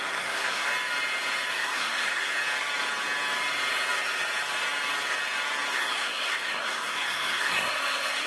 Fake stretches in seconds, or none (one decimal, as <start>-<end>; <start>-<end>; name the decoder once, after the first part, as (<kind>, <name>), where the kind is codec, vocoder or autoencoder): 0.0-0.7 (codec, SNAC); 1.5-2.3; 5.7-8.3